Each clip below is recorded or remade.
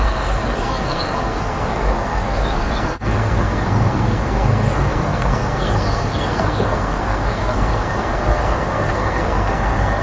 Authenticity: remade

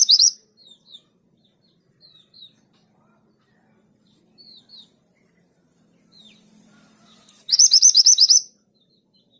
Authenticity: remade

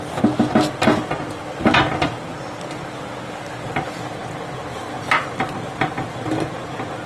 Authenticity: recorded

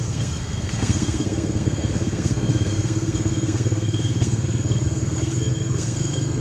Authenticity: remade